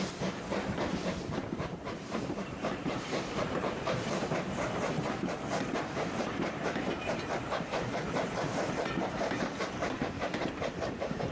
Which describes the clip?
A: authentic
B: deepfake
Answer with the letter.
B